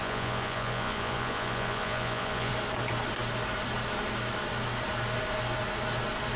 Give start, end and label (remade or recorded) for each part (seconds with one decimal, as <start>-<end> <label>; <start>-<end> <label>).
0.0-2.5 remade; 2.5-6.4 recorded